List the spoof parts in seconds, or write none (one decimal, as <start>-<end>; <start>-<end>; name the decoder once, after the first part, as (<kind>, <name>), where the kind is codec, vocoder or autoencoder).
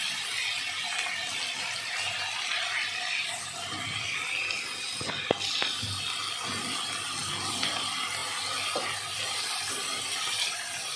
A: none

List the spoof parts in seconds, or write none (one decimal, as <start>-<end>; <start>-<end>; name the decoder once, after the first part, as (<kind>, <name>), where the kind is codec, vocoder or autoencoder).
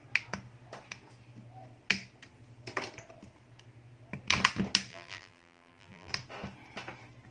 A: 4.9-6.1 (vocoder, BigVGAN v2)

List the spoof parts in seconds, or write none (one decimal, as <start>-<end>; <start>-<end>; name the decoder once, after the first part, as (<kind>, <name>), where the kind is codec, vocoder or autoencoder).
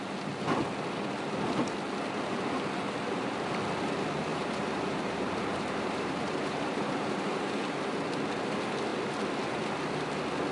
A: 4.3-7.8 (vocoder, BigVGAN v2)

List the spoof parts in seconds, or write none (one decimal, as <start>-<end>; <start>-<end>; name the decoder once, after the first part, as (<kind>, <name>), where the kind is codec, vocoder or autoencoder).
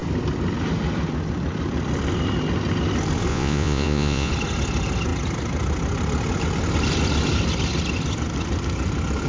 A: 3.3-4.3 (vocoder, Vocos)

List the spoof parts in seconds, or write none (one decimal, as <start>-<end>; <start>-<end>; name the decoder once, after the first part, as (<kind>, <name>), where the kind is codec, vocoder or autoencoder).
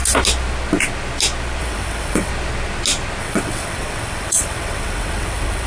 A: 1.6-2.3 (vocoder, WaveNeXt); 3.2-5.7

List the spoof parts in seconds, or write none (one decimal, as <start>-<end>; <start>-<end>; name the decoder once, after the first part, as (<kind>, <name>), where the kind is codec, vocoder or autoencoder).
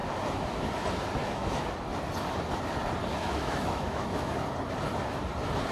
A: 1.2-1.7 (autoencoder, DAC-VAE); 3.1-4.3